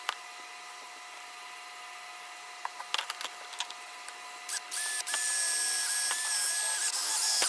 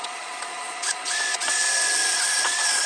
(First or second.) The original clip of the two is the first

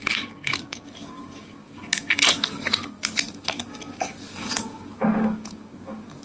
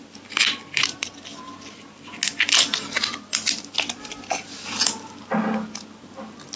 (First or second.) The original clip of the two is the second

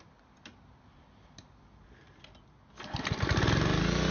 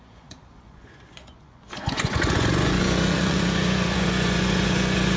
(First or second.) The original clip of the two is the first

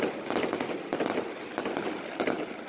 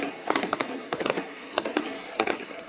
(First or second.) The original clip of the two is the first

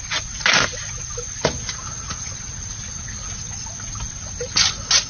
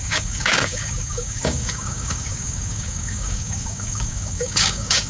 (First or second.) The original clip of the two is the first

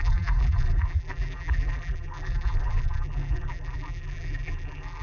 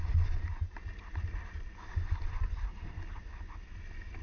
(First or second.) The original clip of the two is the second